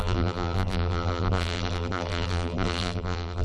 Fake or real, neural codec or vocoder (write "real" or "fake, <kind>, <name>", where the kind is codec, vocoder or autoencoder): fake, vocoder, BigVGAN v2